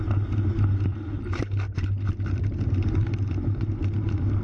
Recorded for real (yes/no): yes